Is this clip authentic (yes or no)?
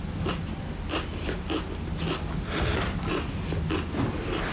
yes